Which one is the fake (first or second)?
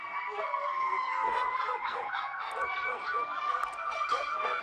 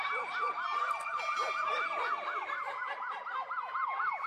first